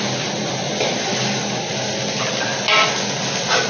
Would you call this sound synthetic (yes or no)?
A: no